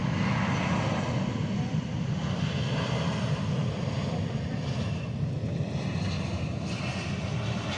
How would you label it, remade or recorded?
recorded